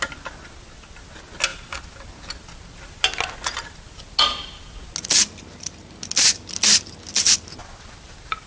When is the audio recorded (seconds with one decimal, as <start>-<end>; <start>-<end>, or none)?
0.0-7.6